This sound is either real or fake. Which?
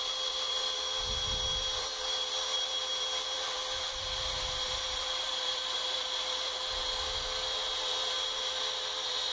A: fake